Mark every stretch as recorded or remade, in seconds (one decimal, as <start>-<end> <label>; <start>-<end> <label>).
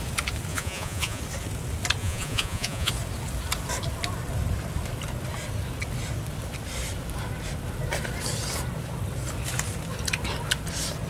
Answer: 0.0-0.5 recorded; 0.5-1.2 remade; 1.2-2.0 recorded; 2.0-2.9 remade; 2.9-11.1 recorded